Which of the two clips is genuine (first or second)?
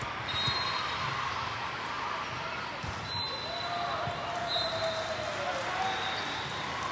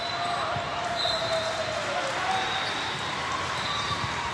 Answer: first